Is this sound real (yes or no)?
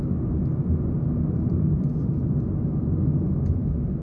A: yes